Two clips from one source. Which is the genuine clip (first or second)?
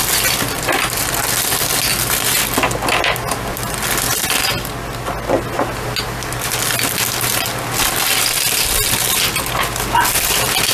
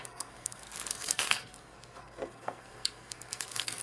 first